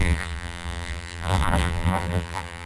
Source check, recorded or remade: remade